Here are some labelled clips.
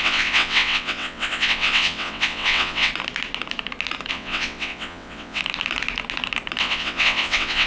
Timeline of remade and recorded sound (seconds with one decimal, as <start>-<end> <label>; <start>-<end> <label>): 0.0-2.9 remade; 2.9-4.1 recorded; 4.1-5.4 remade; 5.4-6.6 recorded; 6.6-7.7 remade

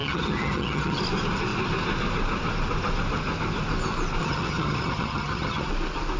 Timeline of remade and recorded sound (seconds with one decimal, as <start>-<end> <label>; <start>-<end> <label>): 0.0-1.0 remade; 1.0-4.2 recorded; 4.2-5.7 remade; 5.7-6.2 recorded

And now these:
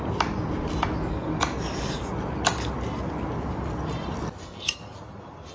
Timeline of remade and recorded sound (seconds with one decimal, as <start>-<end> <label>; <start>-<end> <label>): 0.0-5.5 recorded

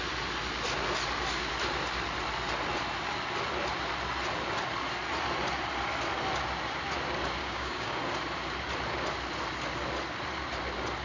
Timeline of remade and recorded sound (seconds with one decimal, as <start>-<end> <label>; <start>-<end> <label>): 0.0-7.4 recorded; 7.4-7.9 remade; 7.9-11.0 recorded

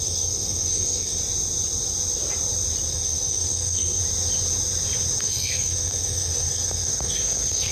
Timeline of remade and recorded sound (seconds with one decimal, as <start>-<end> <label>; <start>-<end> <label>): 0.0-1.2 remade; 1.2-2.9 recorded; 2.9-4.0 remade; 4.0-5.2 recorded; 5.2-7.7 remade

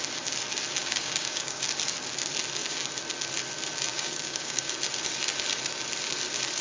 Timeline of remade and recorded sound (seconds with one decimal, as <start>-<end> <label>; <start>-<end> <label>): 0.0-0.8 recorded; 0.8-1.6 remade; 1.6-3.9 recorded; 3.9-4.7 remade; 4.7-6.6 recorded

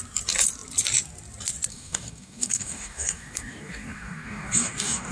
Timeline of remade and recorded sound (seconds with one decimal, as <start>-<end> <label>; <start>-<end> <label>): 0.0-1.7 recorded; 1.7-5.1 remade

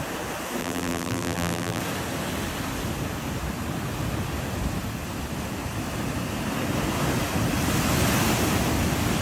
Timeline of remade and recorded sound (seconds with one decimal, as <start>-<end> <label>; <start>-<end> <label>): 0.0-0.6 recorded; 0.6-1.8 remade; 1.8-9.2 recorded